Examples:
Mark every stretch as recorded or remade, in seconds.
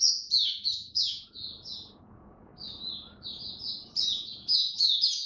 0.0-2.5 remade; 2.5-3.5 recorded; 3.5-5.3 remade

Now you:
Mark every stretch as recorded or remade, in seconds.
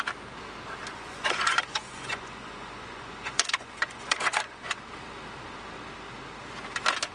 0.0-0.9 recorded; 0.9-4.8 remade; 4.8-7.1 recorded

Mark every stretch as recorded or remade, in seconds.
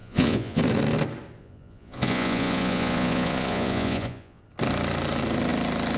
0.0-0.6 remade; 0.6-1.4 recorded; 1.4-4.4 remade; 4.4-6.0 recorded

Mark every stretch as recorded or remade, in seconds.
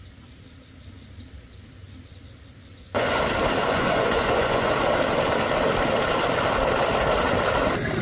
0.0-2.7 recorded; 2.7-3.2 remade; 3.2-3.6 recorded; 3.6-4.7 remade; 4.7-8.0 recorded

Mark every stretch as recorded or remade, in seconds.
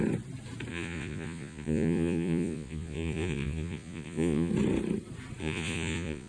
0.0-0.7 recorded; 0.7-4.5 remade; 4.5-5.4 recorded; 5.4-6.3 remade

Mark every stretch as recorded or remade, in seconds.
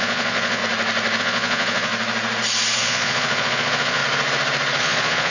0.0-0.6 remade; 0.6-1.2 recorded; 1.2-1.9 remade; 1.9-2.8 recorded; 2.8-4.0 remade; 4.0-4.8 recorded; 4.8-5.3 remade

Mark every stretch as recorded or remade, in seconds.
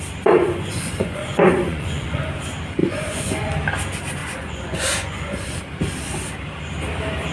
0.0-0.4 recorded; 0.4-2.2 remade; 2.2-2.8 recorded; 2.8-3.5 remade; 3.5-4.2 recorded; 4.2-5.6 remade; 5.6-7.3 recorded